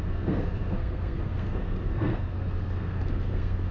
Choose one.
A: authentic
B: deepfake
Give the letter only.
B